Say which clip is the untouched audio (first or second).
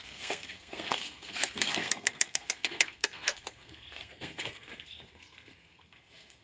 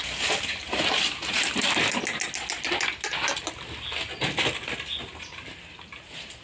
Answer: second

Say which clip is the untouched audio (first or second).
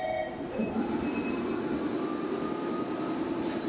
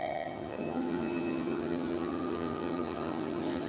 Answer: first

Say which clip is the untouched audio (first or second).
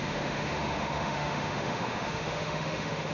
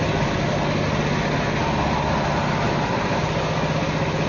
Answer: second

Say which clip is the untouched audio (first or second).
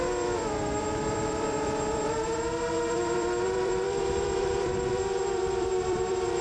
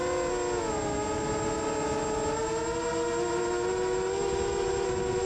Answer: second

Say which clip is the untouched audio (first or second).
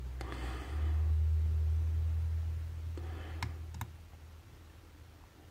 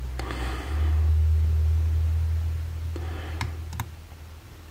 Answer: first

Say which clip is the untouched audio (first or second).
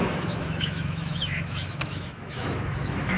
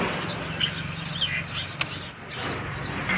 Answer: second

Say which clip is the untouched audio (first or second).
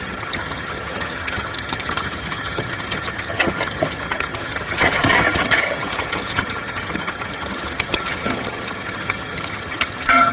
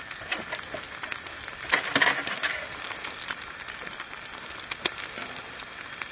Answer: second